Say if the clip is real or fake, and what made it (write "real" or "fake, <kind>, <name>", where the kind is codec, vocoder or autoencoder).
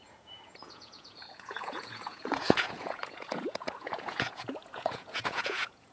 fake, vocoder, Vocos